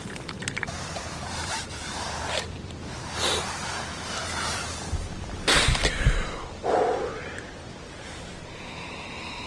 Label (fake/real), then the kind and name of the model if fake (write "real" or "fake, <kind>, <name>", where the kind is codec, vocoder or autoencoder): fake, vocoder, BigVGAN v2